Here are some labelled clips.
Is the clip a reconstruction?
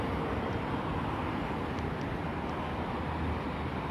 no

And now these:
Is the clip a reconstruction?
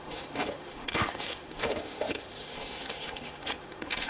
yes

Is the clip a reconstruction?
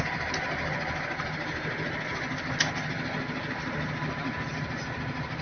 no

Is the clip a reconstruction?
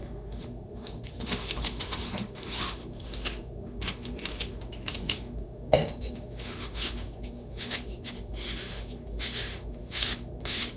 yes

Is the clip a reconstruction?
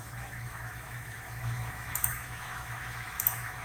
yes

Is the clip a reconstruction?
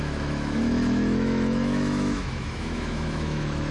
yes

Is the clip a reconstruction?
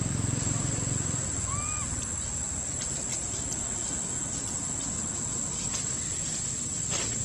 no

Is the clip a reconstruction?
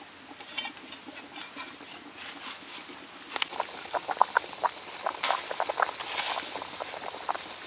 no